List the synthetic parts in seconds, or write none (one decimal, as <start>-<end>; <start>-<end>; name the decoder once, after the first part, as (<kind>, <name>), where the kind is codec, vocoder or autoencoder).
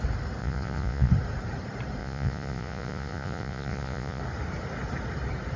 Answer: 0.4-1.1 (vocoder, Vocos); 2.0-4.2